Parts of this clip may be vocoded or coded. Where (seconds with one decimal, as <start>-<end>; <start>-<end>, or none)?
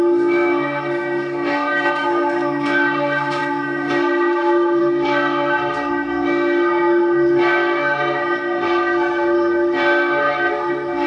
0.0-11.1